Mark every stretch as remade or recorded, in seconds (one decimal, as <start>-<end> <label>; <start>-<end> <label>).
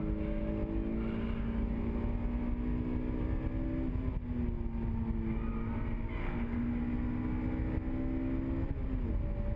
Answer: 0.0-6.2 recorded; 6.2-6.7 remade; 6.7-9.6 recorded